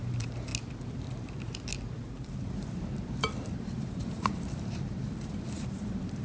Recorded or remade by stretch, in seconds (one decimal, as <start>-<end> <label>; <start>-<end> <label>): 0.0-0.5 remade; 0.5-1.0 recorded; 1.0-1.7 remade; 1.7-2.3 recorded; 2.3-6.2 remade